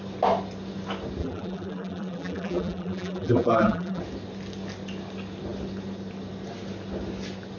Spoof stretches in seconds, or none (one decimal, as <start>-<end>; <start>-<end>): 1.2-4.0